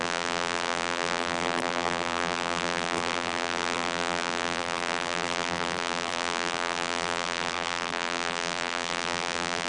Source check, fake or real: fake